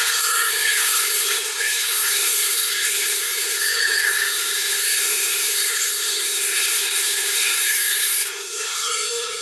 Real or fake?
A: fake